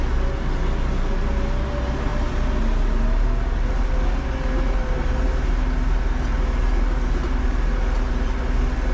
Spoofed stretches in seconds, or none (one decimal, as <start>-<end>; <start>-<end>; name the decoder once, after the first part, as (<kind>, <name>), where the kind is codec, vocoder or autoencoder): none